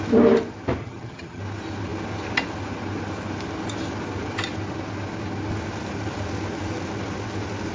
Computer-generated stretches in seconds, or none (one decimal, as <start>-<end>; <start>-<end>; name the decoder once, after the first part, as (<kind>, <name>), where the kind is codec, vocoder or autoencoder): 0.8-1.4 (vocoder, HiFi-GAN)